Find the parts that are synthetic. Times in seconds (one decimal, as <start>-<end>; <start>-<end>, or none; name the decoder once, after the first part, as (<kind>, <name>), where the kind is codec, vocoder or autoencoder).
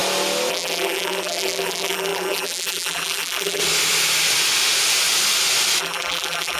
0.5-3.6 (vocoder, BigVGAN v2); 5.8-6.6